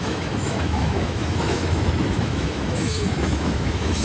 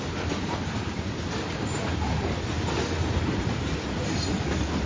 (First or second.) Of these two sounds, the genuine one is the second